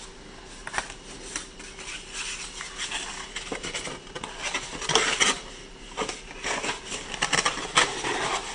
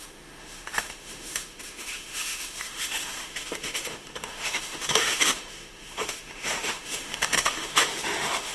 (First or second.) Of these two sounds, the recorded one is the first